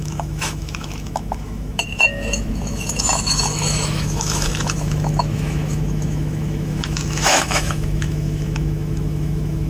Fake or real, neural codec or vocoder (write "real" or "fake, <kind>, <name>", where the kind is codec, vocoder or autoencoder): fake, autoencoder, DAC-VAE